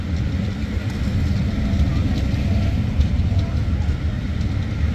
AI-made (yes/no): no